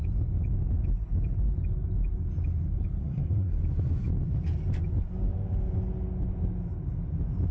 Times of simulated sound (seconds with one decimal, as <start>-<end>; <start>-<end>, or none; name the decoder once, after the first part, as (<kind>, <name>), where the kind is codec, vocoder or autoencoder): 3.0-3.6 (codec, SNAC)